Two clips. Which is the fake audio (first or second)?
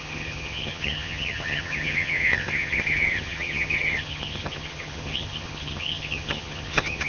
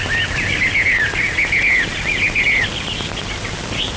first